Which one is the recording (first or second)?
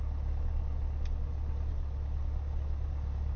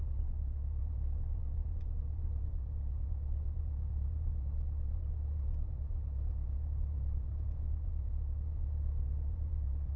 first